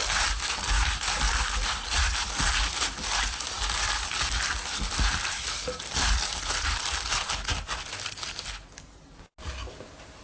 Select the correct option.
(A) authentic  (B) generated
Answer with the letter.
A